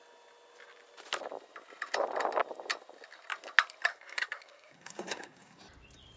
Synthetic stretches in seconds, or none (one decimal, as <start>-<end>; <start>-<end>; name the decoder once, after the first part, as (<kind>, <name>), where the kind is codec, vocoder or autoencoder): 3.9-5.6 (codec, SNAC)